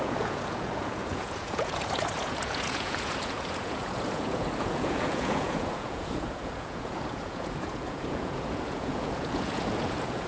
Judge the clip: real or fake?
fake